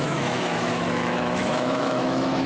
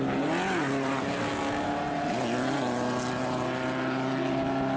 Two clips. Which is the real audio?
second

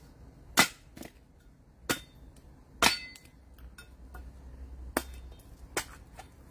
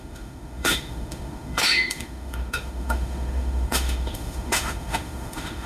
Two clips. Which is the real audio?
first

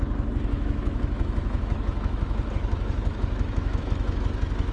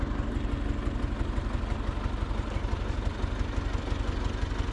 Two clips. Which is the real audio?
second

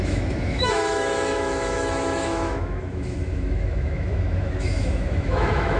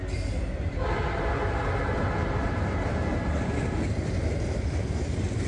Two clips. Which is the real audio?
second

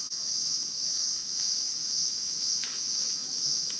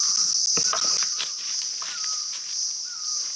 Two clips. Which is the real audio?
second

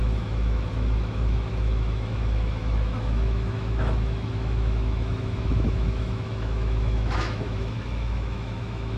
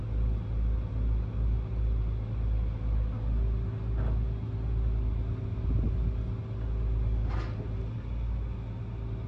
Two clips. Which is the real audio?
second